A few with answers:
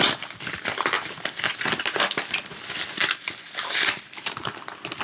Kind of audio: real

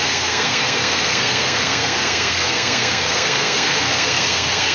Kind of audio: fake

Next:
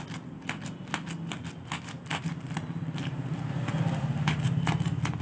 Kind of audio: real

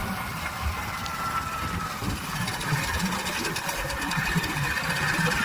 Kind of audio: fake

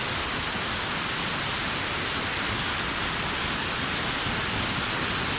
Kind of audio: real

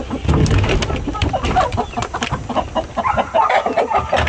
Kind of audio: real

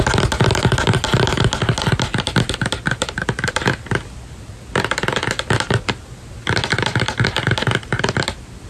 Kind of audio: real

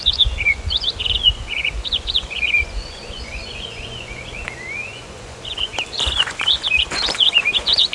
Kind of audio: fake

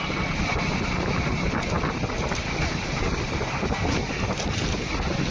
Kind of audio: real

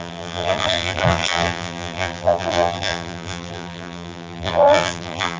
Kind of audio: fake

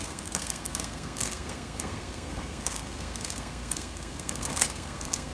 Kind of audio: fake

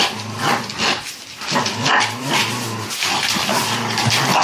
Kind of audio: real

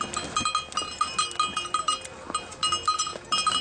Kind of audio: real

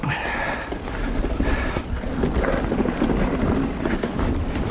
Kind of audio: real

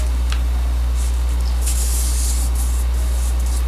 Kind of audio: real